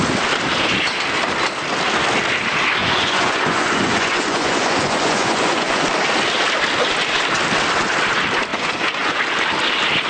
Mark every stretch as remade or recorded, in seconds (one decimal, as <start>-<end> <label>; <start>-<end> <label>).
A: 0.0-2.8 recorded; 2.8-5.8 remade; 5.8-8.5 recorded; 8.5-9.2 remade; 9.2-10.1 recorded